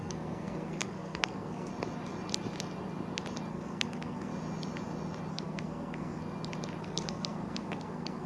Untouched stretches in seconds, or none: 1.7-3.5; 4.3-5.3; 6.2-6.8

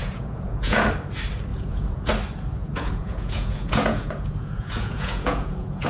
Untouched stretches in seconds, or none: 0.8-1.5; 2.1-2.6

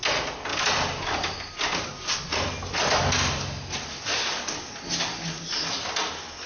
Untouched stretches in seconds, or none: 0.0-6.5

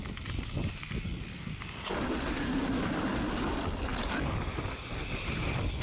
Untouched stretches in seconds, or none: 0.0-5.8